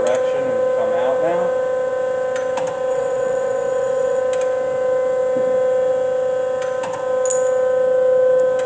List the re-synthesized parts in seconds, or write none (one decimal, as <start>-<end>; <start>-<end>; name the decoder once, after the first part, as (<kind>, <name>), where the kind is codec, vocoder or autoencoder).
2.9-4.2 (vocoder, WaveNeXt)

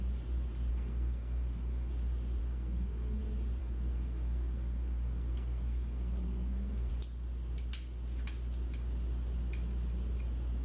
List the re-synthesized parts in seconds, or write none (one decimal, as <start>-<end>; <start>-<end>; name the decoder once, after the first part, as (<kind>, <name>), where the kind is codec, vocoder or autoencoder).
0.7-1.9 (codec, SNAC); 2.4-3.2; 3.6-6.9

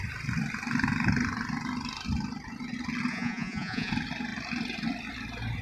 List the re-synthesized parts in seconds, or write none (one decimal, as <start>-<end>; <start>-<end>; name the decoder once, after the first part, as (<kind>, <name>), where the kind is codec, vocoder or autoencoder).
3.1-3.9 (vocoder, Vocos)

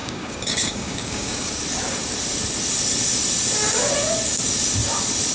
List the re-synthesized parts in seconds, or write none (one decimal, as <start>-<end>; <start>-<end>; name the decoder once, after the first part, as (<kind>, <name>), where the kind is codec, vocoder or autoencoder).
0.0-1.5 (codec, DAC)

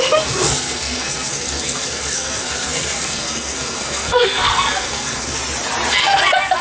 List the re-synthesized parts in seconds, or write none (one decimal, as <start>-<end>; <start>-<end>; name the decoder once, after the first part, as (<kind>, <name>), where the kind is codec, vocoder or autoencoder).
0.0-5.4 (codec, SNAC); 5.9-6.6

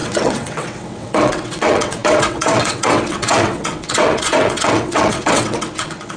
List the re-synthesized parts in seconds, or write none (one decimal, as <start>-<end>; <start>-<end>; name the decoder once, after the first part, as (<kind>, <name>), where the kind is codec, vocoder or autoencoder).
0.0-6.2 (vocoder, WaveNeXt)

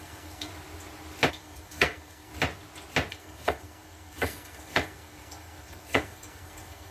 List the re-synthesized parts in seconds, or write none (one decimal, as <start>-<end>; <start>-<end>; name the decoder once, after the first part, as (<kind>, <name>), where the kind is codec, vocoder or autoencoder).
0.0-0.5 (codec, SNAC); 1.3-2.3; 3.1-6.9